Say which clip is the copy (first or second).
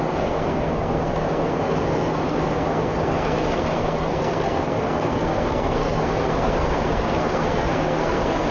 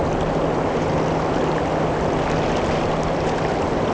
first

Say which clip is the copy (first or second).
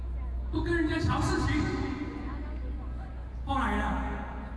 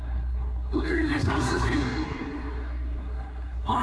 second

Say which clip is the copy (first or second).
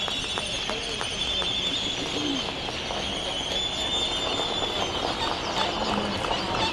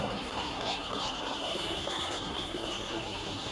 second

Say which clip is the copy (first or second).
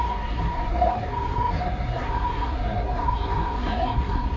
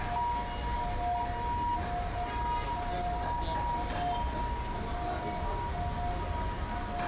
first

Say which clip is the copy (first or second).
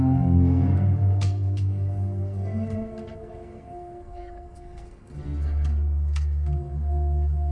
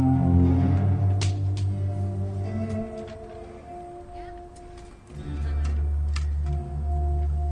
first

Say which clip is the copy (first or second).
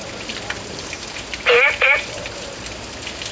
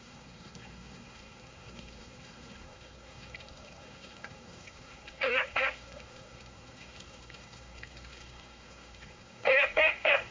second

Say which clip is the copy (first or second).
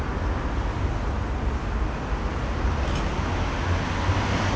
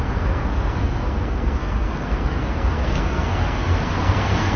second